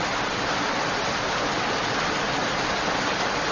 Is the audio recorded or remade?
recorded